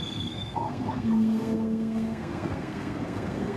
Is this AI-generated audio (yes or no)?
yes